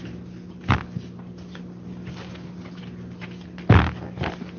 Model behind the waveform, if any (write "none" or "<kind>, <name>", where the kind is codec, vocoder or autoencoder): none